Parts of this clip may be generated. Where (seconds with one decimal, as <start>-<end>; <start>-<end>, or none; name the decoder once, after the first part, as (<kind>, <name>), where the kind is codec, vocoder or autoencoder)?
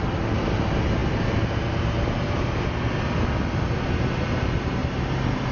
none